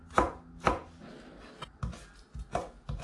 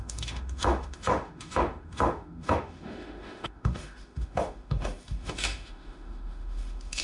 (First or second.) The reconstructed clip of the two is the second